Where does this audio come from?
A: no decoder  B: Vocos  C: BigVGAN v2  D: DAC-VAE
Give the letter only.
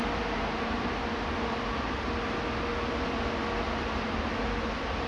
A